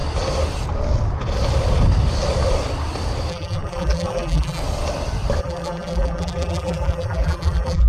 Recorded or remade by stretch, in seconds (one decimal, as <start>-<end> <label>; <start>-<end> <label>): 0.0-3.3 recorded; 3.3-4.6 remade; 4.6-5.4 recorded; 5.4-7.9 remade